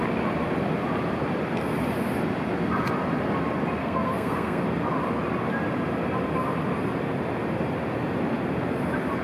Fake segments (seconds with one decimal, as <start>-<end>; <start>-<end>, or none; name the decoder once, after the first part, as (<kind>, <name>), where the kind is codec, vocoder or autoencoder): 3.8-4.6 (codec, SNAC)